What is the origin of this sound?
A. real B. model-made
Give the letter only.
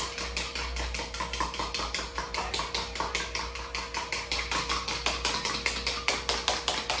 A